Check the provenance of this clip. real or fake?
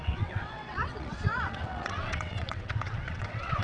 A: fake